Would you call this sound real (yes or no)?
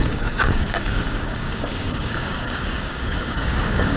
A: no